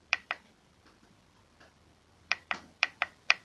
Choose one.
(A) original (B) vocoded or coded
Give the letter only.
B